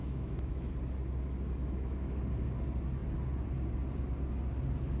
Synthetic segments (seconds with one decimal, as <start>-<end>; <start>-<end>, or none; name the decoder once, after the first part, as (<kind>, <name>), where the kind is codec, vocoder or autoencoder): 0.0-0.7 (autoencoder, DAC-VAE); 1.6-2.2